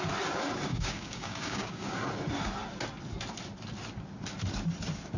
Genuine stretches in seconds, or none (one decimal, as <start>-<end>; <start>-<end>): 0.0-0.7; 2.0-5.2